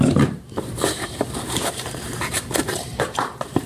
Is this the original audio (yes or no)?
no